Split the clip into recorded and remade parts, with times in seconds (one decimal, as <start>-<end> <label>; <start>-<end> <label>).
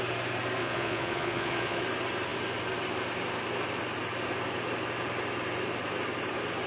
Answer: 0.0-0.6 recorded; 0.6-1.8 remade; 1.8-6.7 recorded